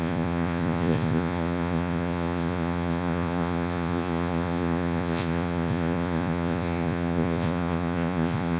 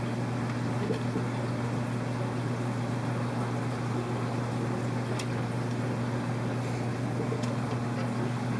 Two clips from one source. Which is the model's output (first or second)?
first